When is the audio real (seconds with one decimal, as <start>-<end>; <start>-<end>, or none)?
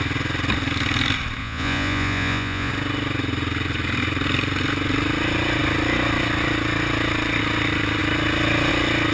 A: 0.0-1.4; 2.7-9.1